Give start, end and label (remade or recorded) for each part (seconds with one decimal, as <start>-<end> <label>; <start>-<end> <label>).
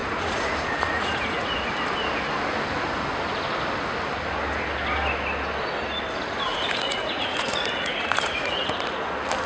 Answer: 0.0-1.7 remade; 1.7-6.5 recorded; 6.5-8.9 remade; 8.9-9.5 recorded